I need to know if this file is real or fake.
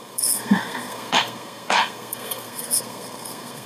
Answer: fake